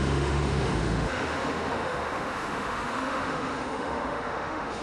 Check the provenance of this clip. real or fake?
fake